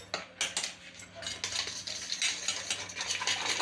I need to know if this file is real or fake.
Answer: real